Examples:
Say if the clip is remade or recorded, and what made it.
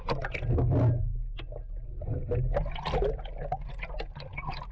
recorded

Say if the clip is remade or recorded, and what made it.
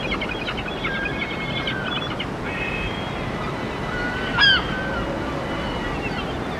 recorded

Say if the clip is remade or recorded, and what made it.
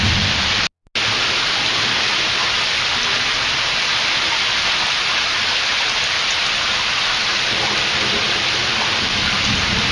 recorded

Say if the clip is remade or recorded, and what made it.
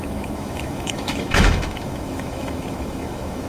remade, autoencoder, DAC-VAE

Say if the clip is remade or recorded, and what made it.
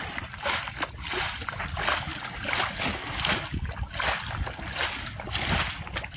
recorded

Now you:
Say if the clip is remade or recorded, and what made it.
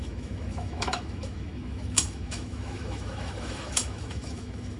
remade, autoencoder, DAC-VAE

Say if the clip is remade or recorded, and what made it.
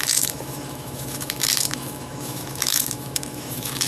remade, autoencoder, DAC-VAE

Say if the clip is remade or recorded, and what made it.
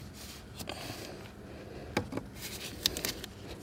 recorded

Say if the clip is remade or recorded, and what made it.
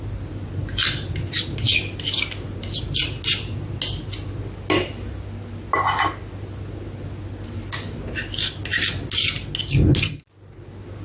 recorded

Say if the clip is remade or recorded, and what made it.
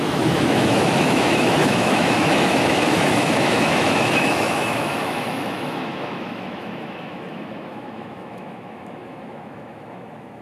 remade, autoencoder, DAC-VAE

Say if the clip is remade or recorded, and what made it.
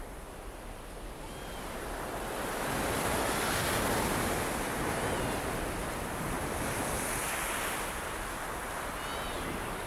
recorded